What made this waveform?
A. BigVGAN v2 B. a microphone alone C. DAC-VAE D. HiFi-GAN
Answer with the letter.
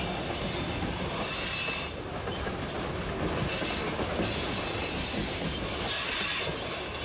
B